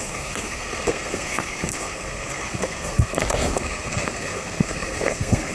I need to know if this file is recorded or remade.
remade